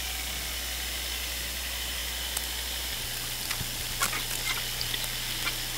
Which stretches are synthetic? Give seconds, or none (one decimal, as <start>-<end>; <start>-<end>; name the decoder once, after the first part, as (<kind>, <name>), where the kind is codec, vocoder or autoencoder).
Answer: none

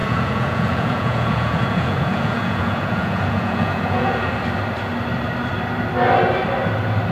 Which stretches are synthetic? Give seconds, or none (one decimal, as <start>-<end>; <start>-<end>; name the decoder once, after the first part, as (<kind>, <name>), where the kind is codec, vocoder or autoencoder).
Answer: 0.0-4.3 (vocoder, Vocos)

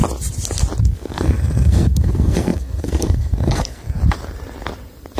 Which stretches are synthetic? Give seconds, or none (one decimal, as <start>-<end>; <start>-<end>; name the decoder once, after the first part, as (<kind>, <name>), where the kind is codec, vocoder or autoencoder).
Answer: 0.8-4.0 (codec, SNAC)

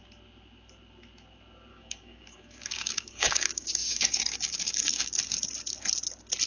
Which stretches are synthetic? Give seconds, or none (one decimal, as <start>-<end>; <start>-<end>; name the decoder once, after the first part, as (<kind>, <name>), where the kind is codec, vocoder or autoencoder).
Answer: 1.7-5.2 (codec, DAC)

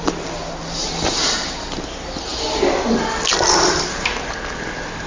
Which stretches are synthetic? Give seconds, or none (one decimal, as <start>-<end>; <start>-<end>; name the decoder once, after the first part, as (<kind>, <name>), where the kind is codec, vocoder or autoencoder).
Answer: none

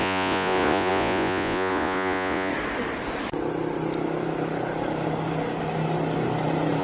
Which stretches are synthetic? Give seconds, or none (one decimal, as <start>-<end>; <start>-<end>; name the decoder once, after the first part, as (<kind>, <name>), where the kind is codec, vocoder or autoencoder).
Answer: 0.0-2.5 (vocoder, Vocos)